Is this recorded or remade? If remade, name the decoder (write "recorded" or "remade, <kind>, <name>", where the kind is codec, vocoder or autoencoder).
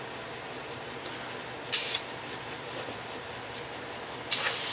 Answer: remade, vocoder, BigVGAN v2